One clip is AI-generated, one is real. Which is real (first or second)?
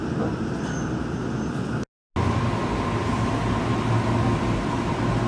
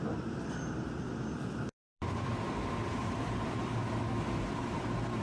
first